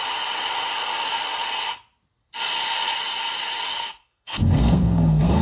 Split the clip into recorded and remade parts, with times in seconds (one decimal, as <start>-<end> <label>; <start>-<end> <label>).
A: 0.0-3.7 recorded; 3.7-5.4 remade